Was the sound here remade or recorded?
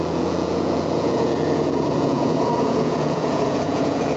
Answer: remade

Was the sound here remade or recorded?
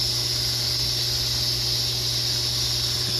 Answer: recorded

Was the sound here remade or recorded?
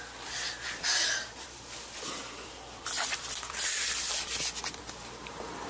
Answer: remade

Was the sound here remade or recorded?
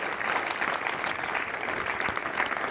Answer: recorded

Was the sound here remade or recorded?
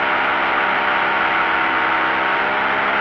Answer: recorded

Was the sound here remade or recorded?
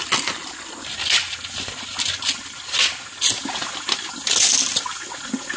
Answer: recorded